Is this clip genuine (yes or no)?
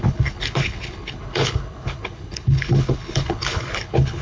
no